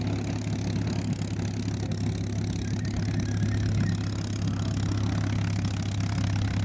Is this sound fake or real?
real